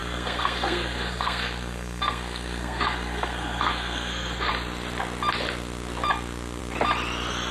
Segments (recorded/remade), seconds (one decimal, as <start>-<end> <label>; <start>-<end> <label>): 0.0-4.5 remade; 4.5-7.5 recorded